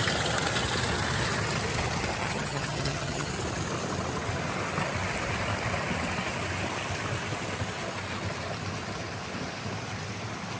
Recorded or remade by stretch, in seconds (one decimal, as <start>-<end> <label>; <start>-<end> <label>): 0.0-2.2 recorded; 2.2-3.3 remade; 3.3-10.6 recorded